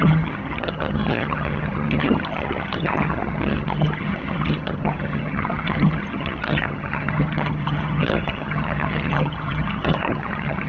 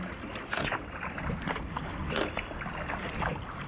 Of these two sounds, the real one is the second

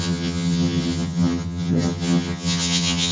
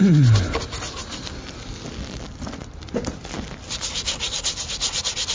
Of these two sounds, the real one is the second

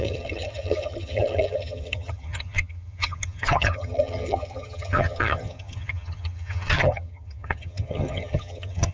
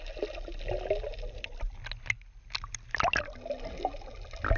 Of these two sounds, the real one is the second